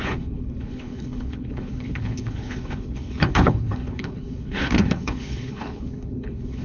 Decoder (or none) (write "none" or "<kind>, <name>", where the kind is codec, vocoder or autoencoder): codec, HILCodec